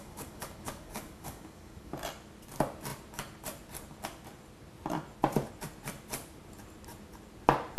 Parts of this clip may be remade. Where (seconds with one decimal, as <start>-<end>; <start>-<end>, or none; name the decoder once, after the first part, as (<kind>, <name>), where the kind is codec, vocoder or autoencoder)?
0.0-1.9 (codec, DAC)